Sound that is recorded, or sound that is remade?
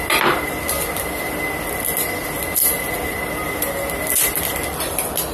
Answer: recorded